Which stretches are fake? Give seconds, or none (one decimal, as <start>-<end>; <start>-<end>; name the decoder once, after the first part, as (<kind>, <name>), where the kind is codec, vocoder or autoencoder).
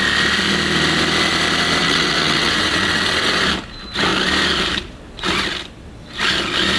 1.8-3.4 (vocoder, WaveNeXt)